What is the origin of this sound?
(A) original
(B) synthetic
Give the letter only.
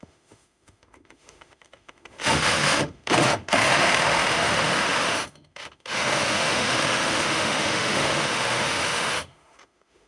B